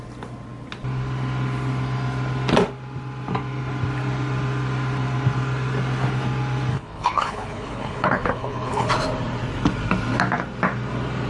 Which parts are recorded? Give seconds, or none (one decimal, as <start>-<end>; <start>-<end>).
0.0-6.7; 8.9-11.3